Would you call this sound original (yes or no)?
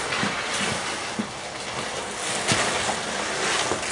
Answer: yes